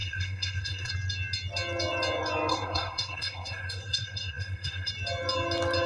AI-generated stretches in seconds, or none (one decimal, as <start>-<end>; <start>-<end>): 0.0-0.9; 2.5-4.9

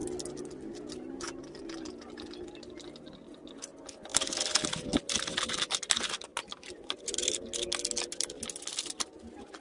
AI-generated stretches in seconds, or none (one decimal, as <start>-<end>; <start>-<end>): none

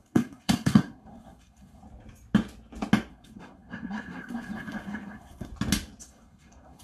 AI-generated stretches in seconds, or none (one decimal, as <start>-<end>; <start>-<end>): 0.0-1.8; 3.1-5.5; 6.0-6.8

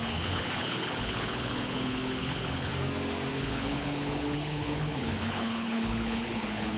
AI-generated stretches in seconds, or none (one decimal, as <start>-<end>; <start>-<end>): 0.0-2.7; 3.3-6.8

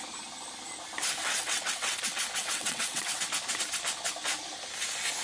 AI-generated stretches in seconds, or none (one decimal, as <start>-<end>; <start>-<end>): 1.2-2.0; 2.4-3.2